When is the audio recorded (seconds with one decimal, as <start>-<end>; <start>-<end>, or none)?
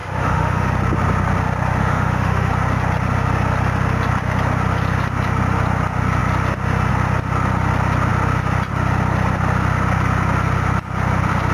0.7-1.8; 2.5-11.5